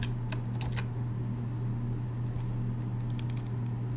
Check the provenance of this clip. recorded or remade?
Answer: recorded